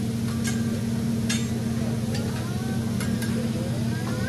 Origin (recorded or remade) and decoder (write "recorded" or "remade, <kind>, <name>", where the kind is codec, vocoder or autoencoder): recorded